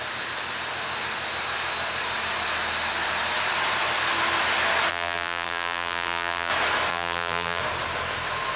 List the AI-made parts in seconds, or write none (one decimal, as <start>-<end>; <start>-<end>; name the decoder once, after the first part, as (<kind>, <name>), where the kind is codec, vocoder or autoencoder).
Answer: 4.9-6.5 (vocoder, BigVGAN v2); 6.9-7.6